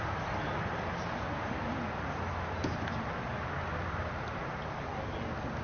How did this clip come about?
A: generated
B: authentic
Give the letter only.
B